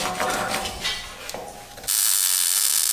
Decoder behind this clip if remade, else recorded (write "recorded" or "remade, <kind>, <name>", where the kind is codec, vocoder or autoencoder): recorded